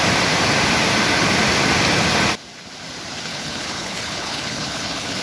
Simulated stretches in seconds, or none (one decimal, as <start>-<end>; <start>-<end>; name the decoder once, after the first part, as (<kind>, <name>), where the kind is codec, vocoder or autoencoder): 3.3-5.2 (codec, HILCodec)